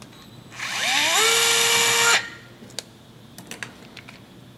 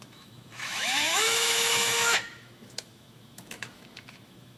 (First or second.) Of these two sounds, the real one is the first